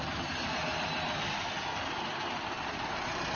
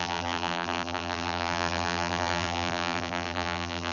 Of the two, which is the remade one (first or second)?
second